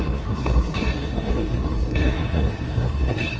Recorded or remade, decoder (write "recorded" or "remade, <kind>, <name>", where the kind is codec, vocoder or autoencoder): remade, codec, SNAC